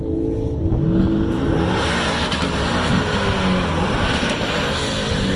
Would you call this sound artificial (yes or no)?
no